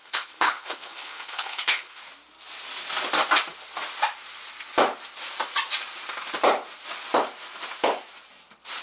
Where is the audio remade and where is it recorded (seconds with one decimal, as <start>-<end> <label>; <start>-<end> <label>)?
0.0-2.0 remade; 2.0-8.8 recorded